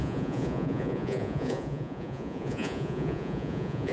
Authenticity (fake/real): fake